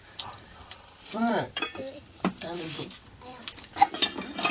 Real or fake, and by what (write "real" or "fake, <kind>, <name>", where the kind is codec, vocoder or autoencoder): fake, vocoder, BigVGAN v2